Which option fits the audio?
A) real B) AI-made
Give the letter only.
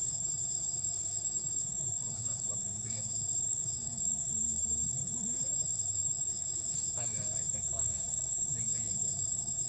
B